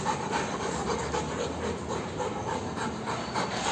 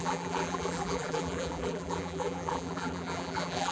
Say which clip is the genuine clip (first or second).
first